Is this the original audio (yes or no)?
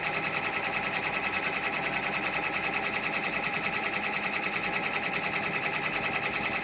yes